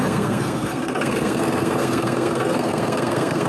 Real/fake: fake